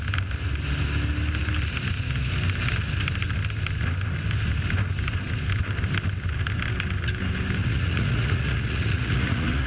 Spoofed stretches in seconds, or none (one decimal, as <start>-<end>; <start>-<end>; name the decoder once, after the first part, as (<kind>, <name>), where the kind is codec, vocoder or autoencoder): 7.6-9.7 (vocoder, Vocos)